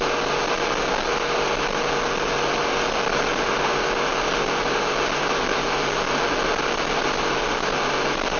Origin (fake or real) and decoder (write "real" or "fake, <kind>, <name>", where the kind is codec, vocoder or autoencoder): real